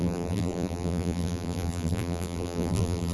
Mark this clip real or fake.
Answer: fake